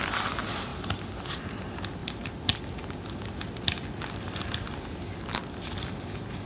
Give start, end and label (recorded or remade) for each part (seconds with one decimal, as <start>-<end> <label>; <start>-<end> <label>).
0.0-6.5 recorded